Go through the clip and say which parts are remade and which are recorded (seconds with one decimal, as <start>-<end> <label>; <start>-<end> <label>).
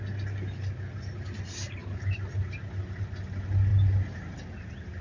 0.0-5.0 recorded